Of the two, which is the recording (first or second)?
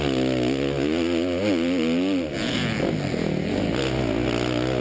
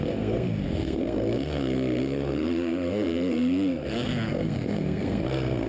first